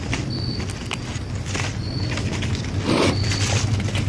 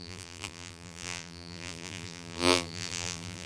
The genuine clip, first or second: first